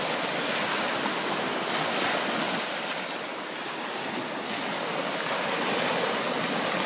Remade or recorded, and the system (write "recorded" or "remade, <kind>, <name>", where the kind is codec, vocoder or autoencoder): recorded